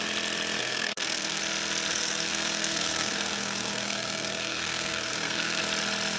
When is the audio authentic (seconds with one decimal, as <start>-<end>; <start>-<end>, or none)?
0.0-0.6; 1.4-1.9; 5.6-6.2